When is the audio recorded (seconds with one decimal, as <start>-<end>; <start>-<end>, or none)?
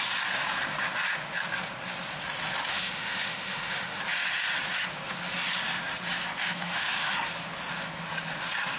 0.0-2.7; 4.0-6.4; 7.3-8.8